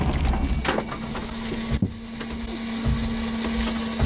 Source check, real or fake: real